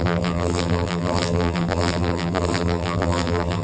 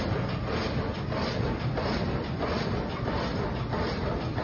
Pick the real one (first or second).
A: second